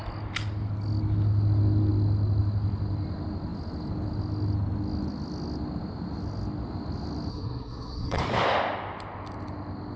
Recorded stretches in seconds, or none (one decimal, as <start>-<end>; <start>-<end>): 0.0-7.3; 8.2-10.0